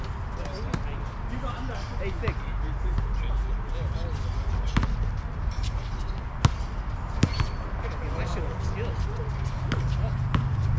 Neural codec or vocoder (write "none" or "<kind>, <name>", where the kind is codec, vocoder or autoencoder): none